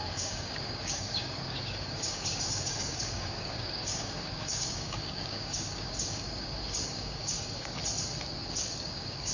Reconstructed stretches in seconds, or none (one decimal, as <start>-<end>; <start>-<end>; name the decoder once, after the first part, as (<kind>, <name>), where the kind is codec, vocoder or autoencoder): 0.0-7.8 (codec, DAC); 8.5-9.3